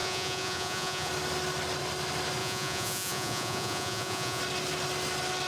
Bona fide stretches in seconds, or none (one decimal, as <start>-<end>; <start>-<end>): 1.1-2.4; 4.4-5.5